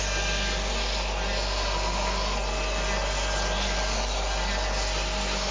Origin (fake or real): real